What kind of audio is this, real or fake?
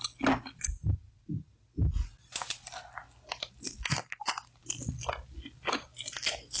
real